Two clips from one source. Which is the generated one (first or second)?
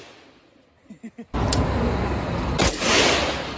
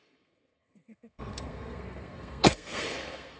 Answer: second